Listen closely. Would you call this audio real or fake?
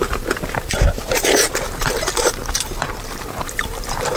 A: fake